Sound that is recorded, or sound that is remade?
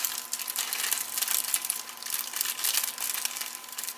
recorded